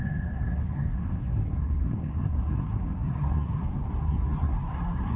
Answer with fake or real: fake